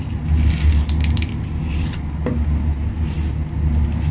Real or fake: real